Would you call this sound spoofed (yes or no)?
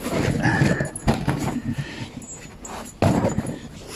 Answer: no